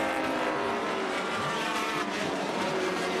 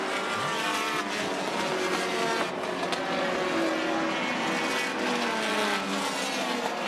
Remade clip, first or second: first